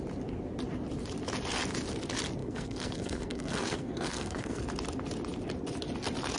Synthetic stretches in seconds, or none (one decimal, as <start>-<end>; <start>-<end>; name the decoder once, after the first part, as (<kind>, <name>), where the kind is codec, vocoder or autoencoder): 2.4-4.6 (codec, SNAC)